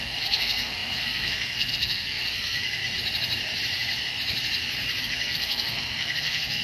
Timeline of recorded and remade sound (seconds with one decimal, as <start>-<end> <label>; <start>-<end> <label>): 0.0-2.8 remade; 2.8-5.0 recorded; 5.0-6.6 remade